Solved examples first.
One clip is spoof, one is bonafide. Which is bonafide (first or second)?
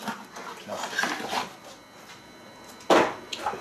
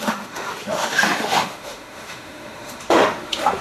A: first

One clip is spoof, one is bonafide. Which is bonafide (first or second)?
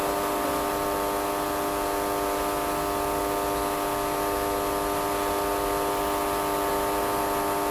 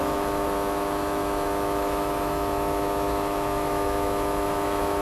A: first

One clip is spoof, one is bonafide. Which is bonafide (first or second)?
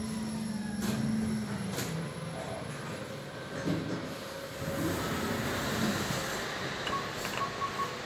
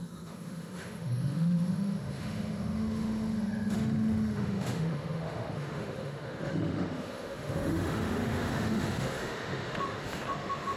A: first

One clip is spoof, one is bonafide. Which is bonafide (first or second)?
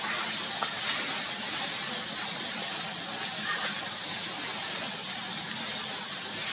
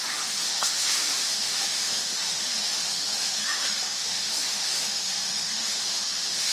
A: first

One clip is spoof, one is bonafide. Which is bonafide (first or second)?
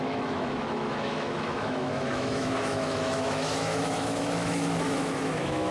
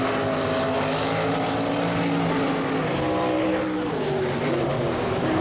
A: second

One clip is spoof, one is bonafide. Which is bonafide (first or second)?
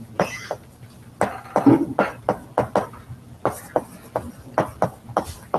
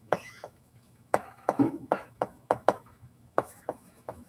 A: first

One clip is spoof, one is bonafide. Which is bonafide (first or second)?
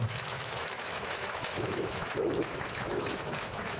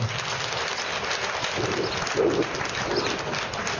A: second